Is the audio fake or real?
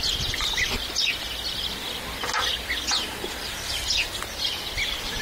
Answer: real